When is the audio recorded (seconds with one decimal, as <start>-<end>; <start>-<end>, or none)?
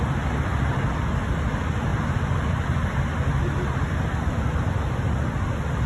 0.0-5.9